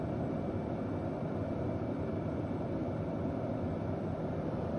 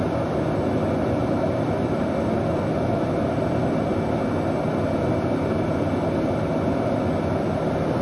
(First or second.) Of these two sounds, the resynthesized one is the first